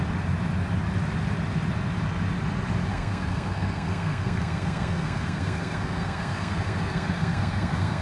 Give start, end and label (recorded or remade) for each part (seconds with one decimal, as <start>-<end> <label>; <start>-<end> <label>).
0.0-2.9 recorded; 2.9-8.0 remade